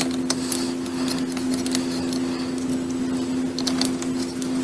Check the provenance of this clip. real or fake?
real